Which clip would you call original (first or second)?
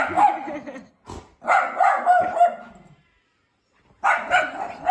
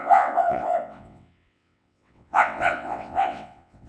first